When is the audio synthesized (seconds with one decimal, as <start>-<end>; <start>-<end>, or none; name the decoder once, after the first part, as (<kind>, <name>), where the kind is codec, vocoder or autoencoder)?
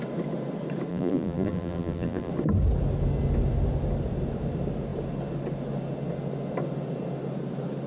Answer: 0.9-2.3 (vocoder, BigVGAN v2)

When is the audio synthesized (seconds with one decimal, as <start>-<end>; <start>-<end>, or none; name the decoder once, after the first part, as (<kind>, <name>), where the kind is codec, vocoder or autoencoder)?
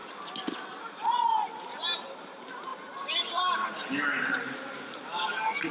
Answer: 0.8-5.7 (vocoder, BigVGAN v2)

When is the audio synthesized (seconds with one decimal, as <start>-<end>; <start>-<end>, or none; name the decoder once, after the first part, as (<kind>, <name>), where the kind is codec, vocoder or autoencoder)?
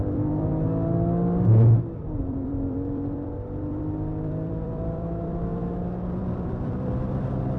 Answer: 0.0-0.5 (vocoder, BigVGAN v2); 1.8-7.6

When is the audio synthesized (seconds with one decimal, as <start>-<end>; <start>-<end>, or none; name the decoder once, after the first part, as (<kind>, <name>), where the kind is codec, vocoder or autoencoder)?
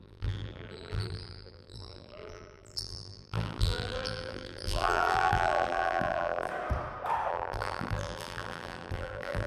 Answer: 0.0-6.5 (vocoder, BigVGAN v2); 7.3-9.5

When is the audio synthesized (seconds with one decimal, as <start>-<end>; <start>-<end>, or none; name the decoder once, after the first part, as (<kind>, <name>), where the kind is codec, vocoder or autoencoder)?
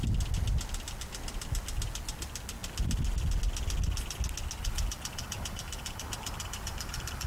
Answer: 4.6-7.3 (vocoder, BigVGAN v2)